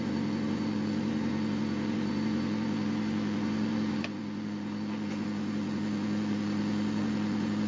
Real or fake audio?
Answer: fake